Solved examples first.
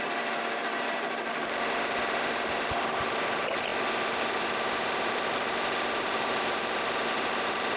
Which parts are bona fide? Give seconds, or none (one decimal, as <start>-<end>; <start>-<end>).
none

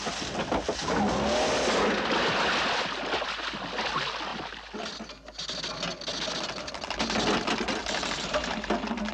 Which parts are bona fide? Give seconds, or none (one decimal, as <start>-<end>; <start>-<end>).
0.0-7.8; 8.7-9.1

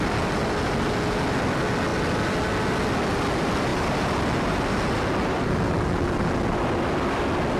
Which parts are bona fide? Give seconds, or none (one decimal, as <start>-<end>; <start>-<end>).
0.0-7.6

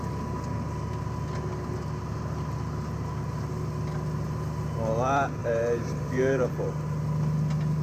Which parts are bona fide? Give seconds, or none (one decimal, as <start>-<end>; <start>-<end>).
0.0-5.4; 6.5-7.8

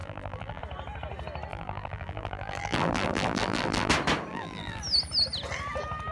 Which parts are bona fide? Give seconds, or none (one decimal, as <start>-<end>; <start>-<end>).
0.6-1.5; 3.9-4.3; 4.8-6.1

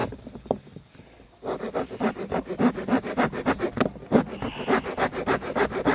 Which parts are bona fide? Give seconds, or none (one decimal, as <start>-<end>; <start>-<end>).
0.0-5.9

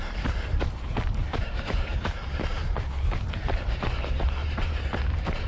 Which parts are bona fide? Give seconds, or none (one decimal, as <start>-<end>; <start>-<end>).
0.0-1.2; 3.6-4.4